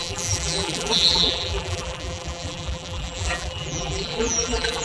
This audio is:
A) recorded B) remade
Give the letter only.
B